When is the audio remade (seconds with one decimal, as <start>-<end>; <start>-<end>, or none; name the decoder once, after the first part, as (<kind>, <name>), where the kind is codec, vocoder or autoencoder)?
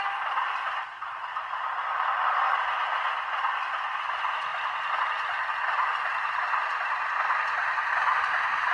none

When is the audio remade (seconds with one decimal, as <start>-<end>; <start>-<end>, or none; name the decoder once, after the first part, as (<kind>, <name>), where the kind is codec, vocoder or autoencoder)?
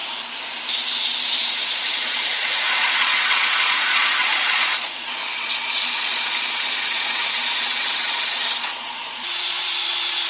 1.4-10.3 (vocoder, Vocos)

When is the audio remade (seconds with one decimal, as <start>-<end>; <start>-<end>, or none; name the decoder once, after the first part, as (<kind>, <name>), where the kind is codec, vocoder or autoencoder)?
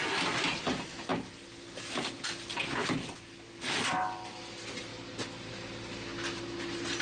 none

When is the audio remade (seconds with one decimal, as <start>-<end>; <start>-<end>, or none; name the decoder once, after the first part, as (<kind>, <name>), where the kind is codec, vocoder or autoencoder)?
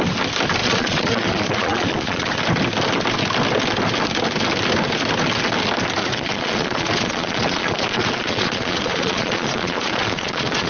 0.6-2.3 (vocoder, Vocos); 6.0-10.7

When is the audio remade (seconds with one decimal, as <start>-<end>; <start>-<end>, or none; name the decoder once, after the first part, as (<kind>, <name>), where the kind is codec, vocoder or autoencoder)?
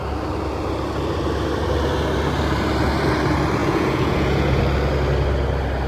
3.6-4.6 (vocoder, Vocos)